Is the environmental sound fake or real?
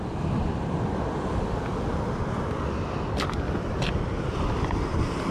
real